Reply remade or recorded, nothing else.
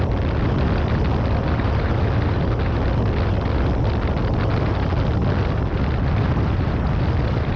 recorded